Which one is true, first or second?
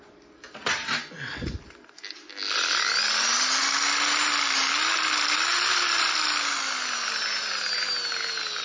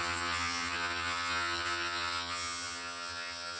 first